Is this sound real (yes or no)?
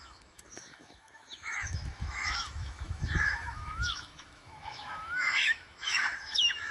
no